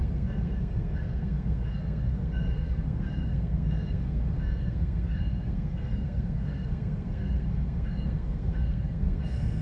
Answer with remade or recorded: remade